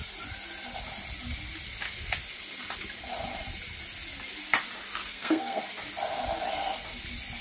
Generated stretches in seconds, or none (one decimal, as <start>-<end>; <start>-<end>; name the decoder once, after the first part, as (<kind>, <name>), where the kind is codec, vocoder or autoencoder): 5.1-5.6 (codec, SNAC)